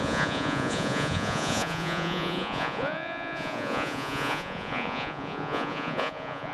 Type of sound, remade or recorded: remade